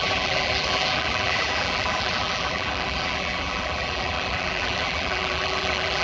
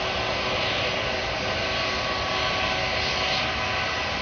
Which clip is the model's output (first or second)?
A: first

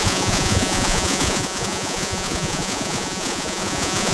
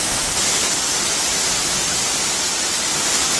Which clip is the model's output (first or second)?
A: first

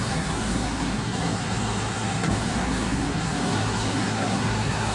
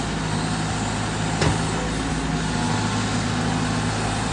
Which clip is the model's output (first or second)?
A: first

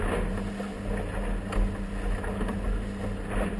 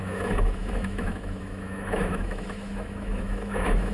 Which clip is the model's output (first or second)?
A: second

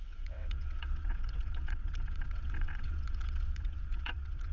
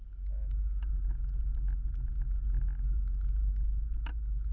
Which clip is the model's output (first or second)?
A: first